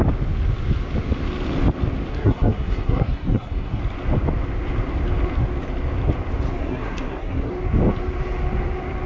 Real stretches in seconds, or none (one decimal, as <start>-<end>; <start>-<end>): 0.0-2.1; 3.8-6.6; 7.5-9.1